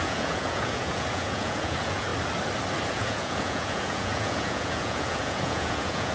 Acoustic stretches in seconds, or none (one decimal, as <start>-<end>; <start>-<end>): 2.1-2.9